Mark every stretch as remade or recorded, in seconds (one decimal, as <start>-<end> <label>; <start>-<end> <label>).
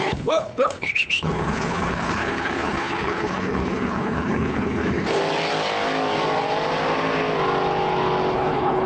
0.0-5.2 remade; 5.2-8.3 recorded; 8.3-8.9 remade